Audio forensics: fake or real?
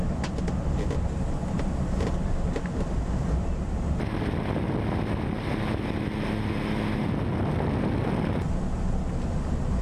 real